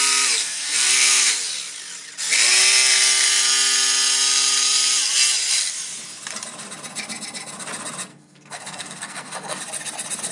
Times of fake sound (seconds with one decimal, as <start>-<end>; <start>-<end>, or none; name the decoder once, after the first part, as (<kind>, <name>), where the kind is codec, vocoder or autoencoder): 0.4-1.3 (codec, SNAC); 8.1-9.6